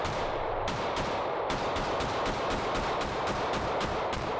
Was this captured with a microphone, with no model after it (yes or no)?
no